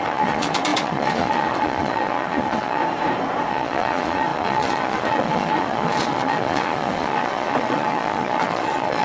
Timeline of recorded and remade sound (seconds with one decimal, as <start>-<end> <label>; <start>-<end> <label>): 0.0-2.8 remade; 2.8-3.5 recorded; 3.5-9.0 remade